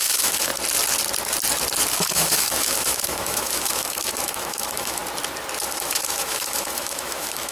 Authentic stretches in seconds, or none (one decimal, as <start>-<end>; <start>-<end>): 0.5-1.9; 5.0-5.6